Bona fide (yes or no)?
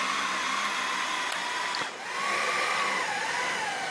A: yes